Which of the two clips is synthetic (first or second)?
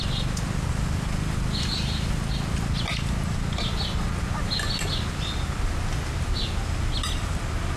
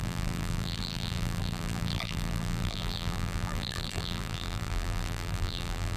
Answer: second